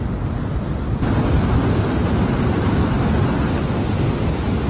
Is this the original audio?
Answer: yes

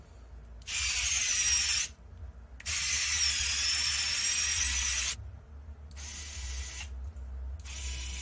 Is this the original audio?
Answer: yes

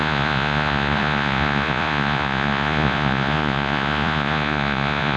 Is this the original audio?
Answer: no